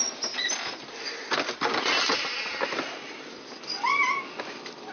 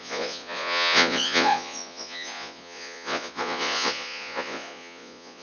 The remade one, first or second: second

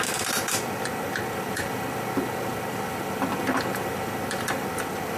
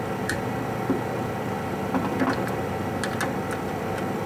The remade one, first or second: first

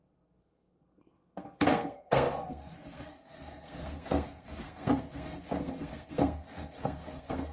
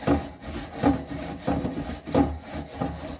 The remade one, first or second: first